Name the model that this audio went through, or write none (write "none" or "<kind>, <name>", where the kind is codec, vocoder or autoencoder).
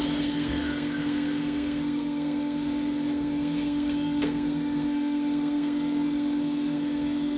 codec, SNAC